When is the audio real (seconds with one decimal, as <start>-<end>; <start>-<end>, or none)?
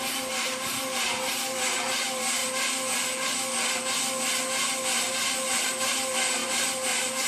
2.4-5.1